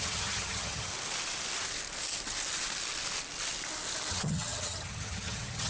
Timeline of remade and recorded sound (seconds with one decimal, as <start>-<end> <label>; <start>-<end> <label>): 0.0-0.9 remade; 0.9-4.1 recorded; 4.1-5.7 remade